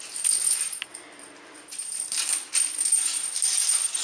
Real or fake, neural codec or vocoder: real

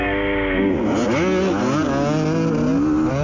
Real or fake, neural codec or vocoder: real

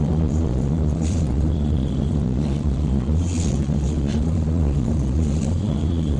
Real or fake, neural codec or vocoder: fake, vocoder, Vocos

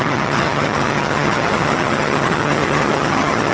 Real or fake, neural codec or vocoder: fake, vocoder, HiFi-GAN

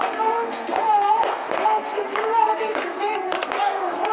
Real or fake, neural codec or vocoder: fake, codec, SNAC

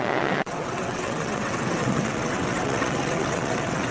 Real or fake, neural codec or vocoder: fake, vocoder, WaveNeXt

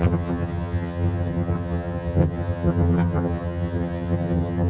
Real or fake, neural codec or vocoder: fake, vocoder, HiFi-GAN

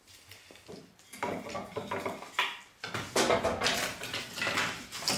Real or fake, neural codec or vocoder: real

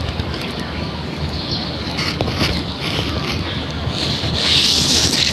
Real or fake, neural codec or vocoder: fake, codec, DAC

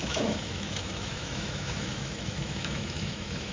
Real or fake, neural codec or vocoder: fake, autoencoder, DAC-VAE